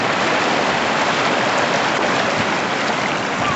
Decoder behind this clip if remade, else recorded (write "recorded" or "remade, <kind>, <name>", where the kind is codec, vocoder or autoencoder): recorded